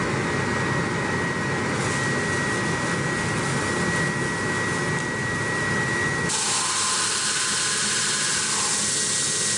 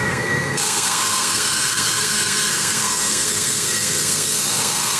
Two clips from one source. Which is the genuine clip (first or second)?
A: first